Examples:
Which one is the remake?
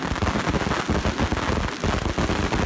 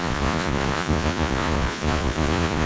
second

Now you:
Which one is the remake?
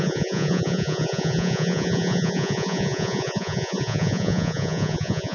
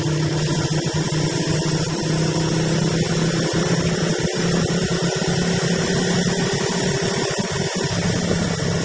first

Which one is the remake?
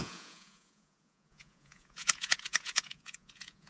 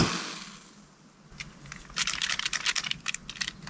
first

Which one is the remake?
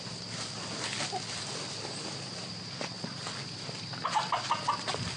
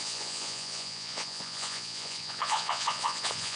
second